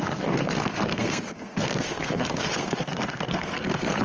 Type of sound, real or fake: fake